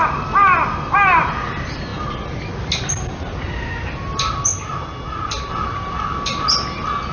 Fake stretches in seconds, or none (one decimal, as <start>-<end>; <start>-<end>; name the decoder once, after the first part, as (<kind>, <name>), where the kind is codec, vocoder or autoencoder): none